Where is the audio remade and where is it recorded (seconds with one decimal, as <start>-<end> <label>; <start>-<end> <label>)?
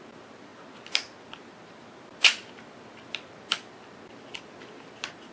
0.0-5.3 recorded